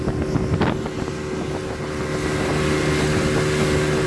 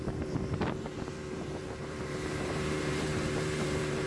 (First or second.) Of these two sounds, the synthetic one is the second